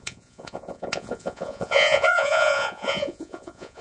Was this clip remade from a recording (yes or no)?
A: yes